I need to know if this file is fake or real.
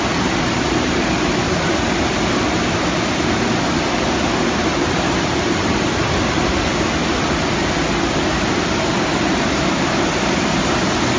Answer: real